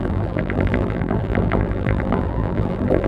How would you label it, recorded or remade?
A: remade